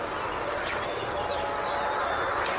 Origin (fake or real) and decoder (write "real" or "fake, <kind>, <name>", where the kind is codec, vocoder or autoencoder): real